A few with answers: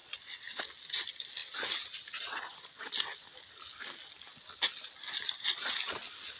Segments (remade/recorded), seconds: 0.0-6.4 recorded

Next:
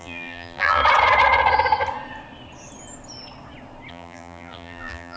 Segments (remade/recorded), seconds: 0.0-0.8 remade; 0.8-3.9 recorded; 3.9-5.2 remade

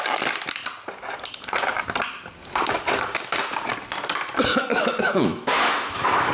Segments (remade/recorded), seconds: 0.0-4.7 recorded; 4.7-6.3 remade

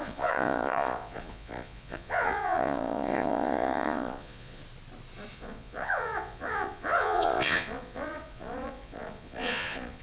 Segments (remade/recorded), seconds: 0.0-4.6 remade; 4.6-5.3 recorded; 5.3-10.0 remade

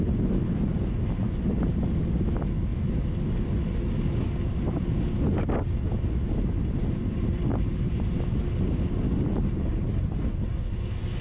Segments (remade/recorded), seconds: 0.0-6.8 recorded; 6.8-7.9 remade; 7.9-9.6 recorded; 9.6-10.4 remade; 10.4-11.2 recorded

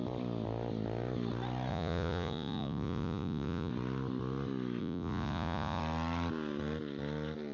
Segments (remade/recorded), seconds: 0.0-1.7 recorded; 1.7-3.7 remade; 3.7-4.8 recorded; 4.8-5.8 remade; 5.8-7.5 recorded

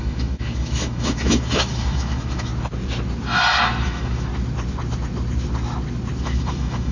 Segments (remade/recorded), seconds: 0.0-2.5 remade; 2.5-3.8 recorded; 3.8-4.3 remade; 4.3-6.2 recorded; 6.2-6.9 remade

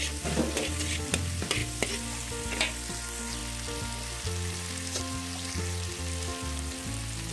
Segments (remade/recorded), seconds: 0.0-7.3 recorded